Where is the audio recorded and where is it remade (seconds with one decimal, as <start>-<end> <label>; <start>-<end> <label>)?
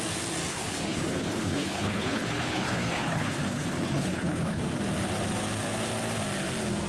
0.0-0.5 recorded; 0.5-4.6 remade; 4.6-6.9 recorded